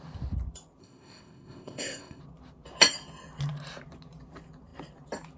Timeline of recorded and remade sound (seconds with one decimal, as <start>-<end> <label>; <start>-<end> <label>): 0.0-0.8 recorded; 0.8-2.2 remade; 2.2-5.4 recorded